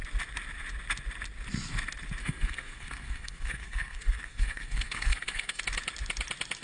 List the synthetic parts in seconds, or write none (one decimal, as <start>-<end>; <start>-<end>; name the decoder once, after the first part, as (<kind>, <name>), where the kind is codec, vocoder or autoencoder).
2.2-5.6 (codec, SNAC)